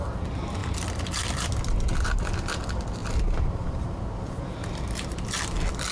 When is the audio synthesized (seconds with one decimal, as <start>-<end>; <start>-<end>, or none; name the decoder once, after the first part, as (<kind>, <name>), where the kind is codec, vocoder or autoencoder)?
none